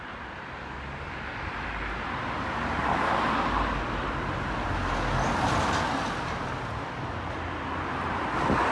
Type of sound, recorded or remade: recorded